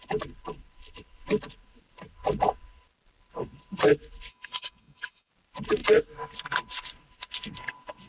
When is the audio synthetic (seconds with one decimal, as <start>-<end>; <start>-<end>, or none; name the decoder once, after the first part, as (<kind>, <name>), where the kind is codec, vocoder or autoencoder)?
4.3-5.3 (codec, DAC)